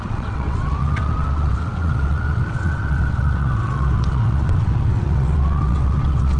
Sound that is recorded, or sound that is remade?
remade